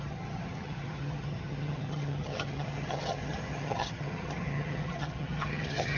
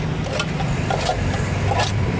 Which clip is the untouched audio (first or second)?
second